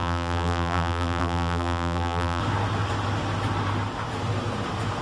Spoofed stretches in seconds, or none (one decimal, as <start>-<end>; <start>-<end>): 0.0-2.4